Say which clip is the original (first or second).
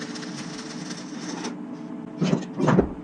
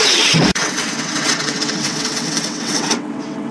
first